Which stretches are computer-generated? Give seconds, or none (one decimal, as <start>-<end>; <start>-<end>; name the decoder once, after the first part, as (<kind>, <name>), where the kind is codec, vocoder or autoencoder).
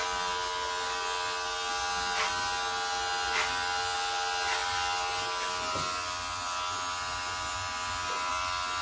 none